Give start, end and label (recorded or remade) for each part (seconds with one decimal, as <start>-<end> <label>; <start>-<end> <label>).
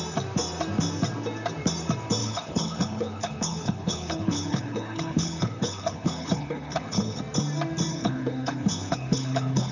0.0-2.2 recorded; 2.2-7.2 remade; 7.2-7.9 recorded; 7.9-9.7 remade